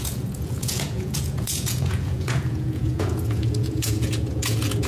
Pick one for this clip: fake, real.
fake